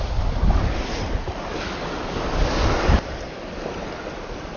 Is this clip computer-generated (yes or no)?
no